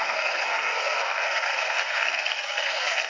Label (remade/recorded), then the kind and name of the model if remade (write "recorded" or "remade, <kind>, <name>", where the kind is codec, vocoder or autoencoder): remade, codec, SNAC